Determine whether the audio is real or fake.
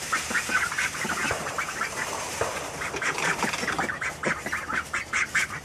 fake